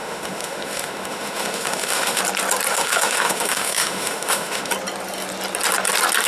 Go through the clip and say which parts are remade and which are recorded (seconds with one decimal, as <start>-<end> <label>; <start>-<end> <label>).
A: 0.0-2.2 remade; 2.2-2.7 recorded; 2.7-4.7 remade; 4.7-6.3 recorded